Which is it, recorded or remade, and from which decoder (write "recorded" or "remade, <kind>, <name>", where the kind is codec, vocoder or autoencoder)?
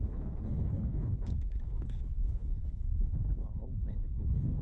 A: remade, codec, HILCodec